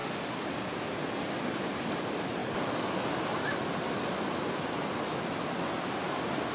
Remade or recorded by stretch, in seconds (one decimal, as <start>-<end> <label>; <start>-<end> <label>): 0.0-6.5 recorded